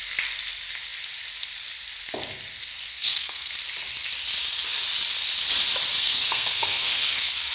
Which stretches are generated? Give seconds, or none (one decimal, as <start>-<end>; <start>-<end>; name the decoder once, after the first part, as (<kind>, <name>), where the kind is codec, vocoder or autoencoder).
2.9-3.5 (codec, SNAC); 6.0-7.5